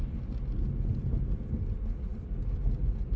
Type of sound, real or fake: real